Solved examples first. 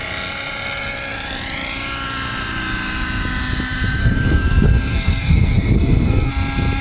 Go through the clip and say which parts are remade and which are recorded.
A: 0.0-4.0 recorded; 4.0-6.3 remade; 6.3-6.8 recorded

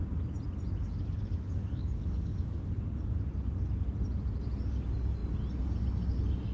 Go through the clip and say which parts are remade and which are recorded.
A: 0.0-0.8 recorded; 0.8-2.6 remade; 2.6-6.5 recorded